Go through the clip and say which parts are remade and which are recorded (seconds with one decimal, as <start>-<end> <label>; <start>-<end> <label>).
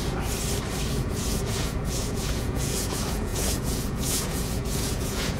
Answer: 0.0-0.9 recorded; 0.9-5.4 remade